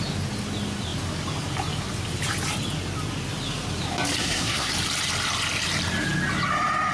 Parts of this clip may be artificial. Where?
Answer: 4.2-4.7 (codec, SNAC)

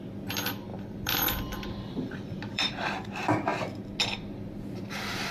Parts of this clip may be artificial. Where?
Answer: 0.7-2.7 (vocoder, BigVGAN v2)

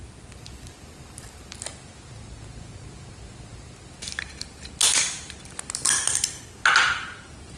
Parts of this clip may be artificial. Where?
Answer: none

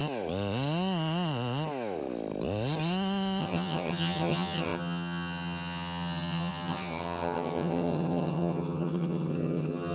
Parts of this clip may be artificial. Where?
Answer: 3.4-9.9 (vocoder, HiFi-GAN)

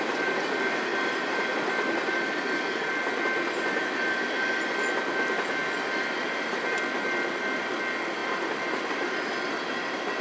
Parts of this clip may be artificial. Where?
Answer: 0.9-3.0 (vocoder, BigVGAN v2); 8.2-8.9

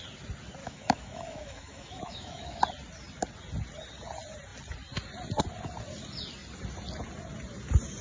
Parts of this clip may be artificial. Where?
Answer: 0.6-2.6 (autoencoder, DAC-VAE)

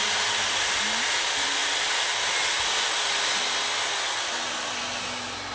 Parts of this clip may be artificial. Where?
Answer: none